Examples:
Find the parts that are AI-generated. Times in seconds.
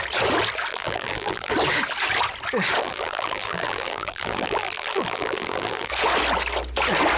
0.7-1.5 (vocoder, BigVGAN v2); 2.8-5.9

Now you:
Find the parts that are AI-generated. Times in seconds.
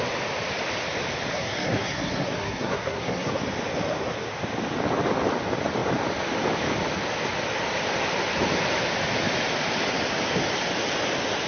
1.3-3.3 (codec, SNAC)